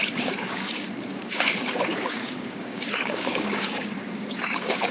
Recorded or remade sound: remade